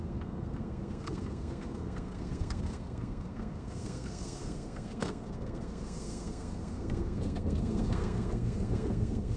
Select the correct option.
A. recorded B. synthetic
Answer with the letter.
B